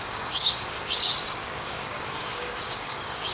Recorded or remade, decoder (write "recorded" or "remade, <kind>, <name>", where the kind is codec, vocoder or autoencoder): remade, codec, DAC